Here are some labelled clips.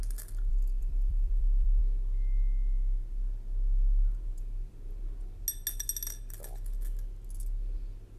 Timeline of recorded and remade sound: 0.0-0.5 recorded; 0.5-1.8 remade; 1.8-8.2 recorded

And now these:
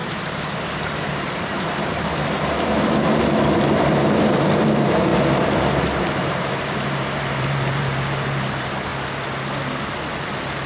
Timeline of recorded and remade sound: 0.0-5.1 remade; 5.1-6.0 recorded; 6.0-8.9 remade; 8.9-10.7 recorded

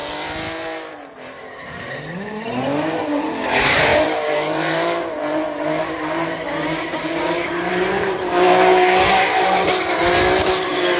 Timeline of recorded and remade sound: 0.0-11.0 remade

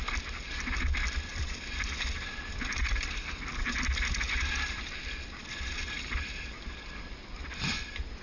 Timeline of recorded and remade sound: 0.0-1.3 recorded; 1.3-3.3 remade; 3.3-8.2 recorded

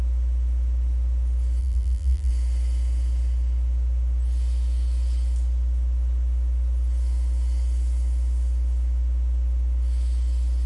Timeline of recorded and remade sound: 0.0-1.6 recorded; 1.6-2.3 remade; 2.3-10.7 recorded

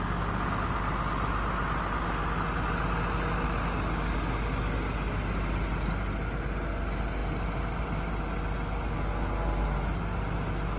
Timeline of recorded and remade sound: 0.0-10.8 recorded

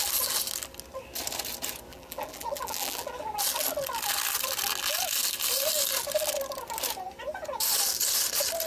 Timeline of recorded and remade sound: 0.0-1.9 recorded; 1.9-3.4 remade; 3.4-8.7 recorded